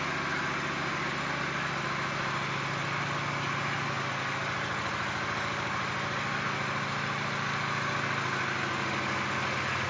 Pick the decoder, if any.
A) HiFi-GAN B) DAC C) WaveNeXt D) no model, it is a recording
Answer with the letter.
D